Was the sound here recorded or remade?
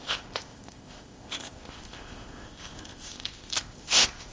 remade